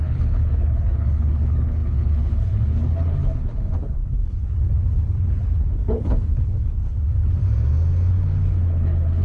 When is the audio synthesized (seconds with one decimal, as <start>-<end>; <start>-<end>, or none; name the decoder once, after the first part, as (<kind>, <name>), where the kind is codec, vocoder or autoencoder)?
0.0-7.4 (codec, HILCodec); 8.1-9.2